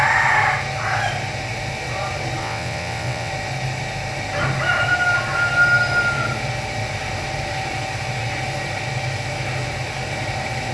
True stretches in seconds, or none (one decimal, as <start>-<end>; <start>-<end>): 0.0-2.4; 3.3-10.7